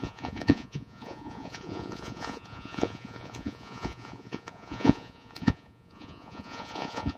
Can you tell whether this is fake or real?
fake